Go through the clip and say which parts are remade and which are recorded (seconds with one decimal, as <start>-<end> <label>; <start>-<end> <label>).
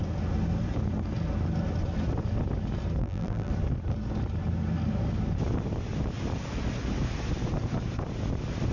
0.0-3.0 recorded; 3.0-3.5 remade; 3.5-8.7 recorded